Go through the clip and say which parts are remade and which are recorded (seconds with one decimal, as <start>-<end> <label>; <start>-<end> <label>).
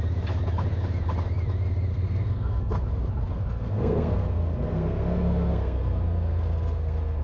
0.0-1.9 recorded; 1.9-2.8 remade; 2.8-3.3 recorded; 3.3-7.2 remade